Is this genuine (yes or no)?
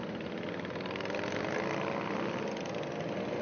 yes